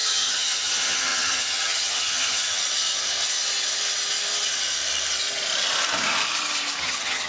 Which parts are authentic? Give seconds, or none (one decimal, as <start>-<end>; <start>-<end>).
2.6-6.8